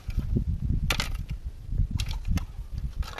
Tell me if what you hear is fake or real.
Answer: real